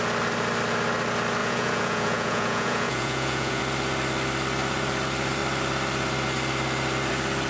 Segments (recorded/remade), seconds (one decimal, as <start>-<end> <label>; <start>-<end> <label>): 0.0-1.4 recorded; 1.4-3.6 remade; 3.6-7.5 recorded